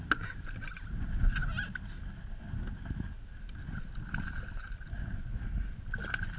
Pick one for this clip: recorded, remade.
recorded